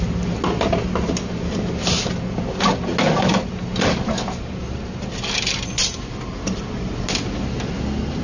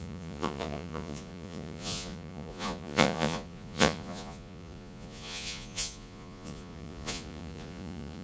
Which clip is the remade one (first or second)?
second